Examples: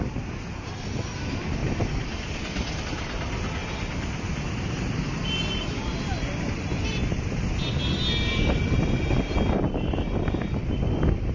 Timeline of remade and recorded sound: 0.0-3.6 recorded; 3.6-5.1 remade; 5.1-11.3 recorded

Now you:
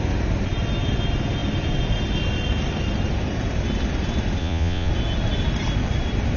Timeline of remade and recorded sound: 0.0-4.4 recorded; 4.4-4.9 remade; 4.9-6.4 recorded

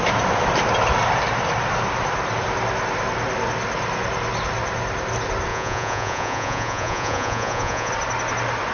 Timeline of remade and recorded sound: 0.0-5.5 recorded; 5.5-7.9 remade; 7.9-8.7 recorded

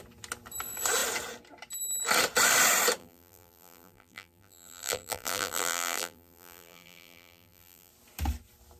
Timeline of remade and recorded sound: 0.0-3.0 recorded; 3.0-7.9 remade; 7.9-8.8 recorded

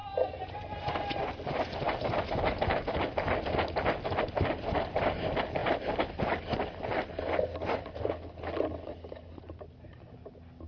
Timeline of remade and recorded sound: 0.0-10.7 recorded

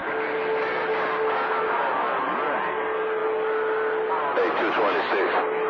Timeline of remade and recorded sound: 0.0-5.7 recorded

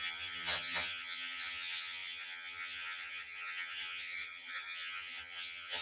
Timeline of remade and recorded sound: 0.0-5.8 remade

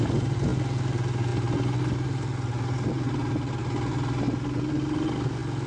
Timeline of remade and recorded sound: 0.0-5.7 recorded